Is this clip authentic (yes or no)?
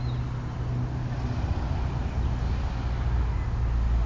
yes